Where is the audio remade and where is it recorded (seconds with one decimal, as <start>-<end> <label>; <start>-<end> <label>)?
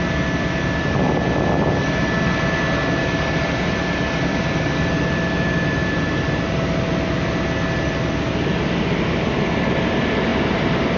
0.0-11.0 recorded